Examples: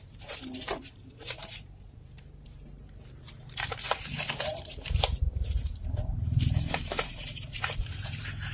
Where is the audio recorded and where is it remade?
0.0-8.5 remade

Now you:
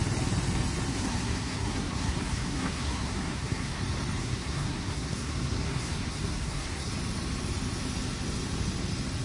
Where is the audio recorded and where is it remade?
0.0-0.9 recorded; 0.9-3.8 remade; 3.8-4.2 recorded; 4.2-6.9 remade; 6.9-9.2 recorded